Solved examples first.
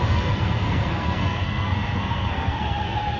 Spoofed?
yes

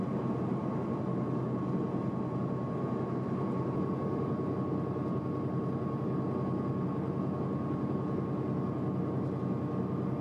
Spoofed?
no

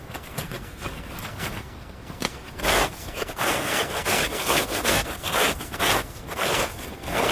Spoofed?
yes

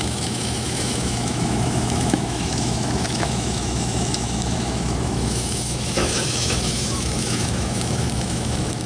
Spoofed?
yes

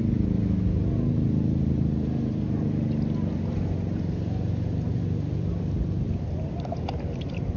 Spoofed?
no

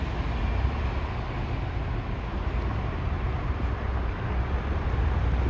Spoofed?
no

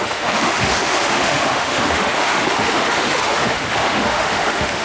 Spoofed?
yes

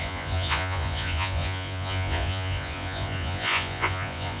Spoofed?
yes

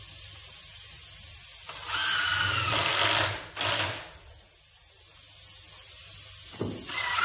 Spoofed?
no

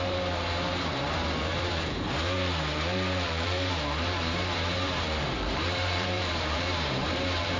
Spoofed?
yes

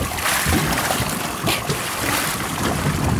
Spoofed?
yes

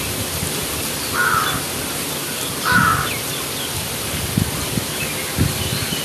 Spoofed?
no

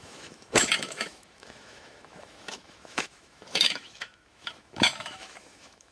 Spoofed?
yes